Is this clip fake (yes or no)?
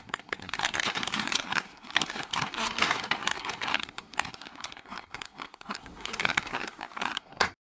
yes